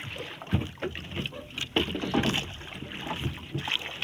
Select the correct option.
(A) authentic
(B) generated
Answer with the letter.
A